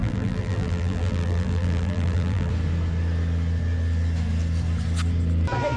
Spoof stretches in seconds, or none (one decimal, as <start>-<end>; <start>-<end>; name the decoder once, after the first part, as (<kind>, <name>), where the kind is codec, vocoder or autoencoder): 0.0-2.5 (vocoder, BigVGAN v2)